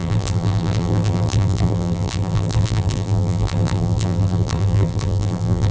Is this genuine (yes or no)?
no